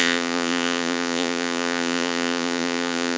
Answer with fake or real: fake